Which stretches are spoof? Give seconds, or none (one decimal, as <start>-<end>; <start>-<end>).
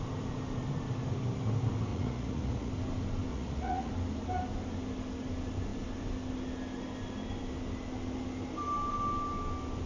1.9-2.7; 3.3-3.9